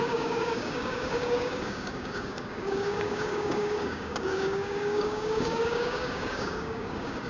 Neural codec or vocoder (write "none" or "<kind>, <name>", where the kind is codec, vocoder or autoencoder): codec, DAC